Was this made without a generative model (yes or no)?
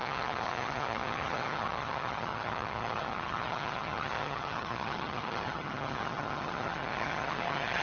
no